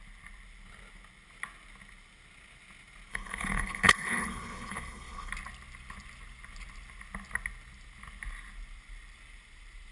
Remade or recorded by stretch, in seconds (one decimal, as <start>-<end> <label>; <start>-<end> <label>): 0.0-3.1 recorded; 3.1-5.3 remade; 5.3-9.9 recorded